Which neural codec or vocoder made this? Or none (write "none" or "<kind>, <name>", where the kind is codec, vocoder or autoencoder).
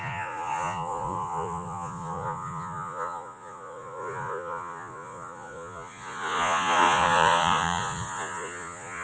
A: vocoder, Vocos